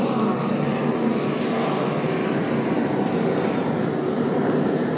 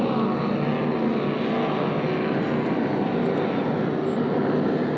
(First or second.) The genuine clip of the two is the second